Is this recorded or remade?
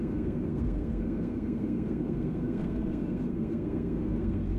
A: remade